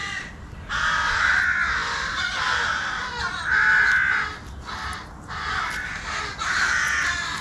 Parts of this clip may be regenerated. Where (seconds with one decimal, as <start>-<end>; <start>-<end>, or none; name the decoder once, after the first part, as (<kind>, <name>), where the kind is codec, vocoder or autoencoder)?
none